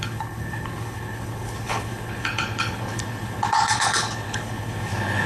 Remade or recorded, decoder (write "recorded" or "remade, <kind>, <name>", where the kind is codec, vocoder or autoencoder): remade, codec, HILCodec